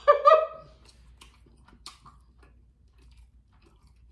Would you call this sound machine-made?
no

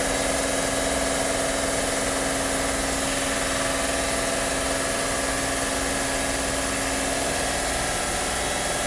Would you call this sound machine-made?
no